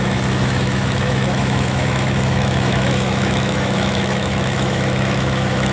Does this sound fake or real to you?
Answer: fake